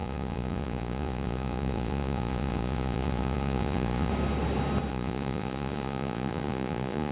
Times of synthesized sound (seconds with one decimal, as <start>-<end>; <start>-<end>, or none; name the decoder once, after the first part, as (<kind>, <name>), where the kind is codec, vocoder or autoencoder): 0.0-4.1 (vocoder, Vocos); 4.9-7.1